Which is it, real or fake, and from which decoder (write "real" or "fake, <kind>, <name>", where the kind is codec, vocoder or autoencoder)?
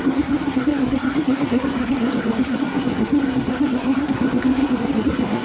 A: fake, codec, SNAC